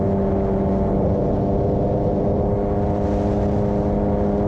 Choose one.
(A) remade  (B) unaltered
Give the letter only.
B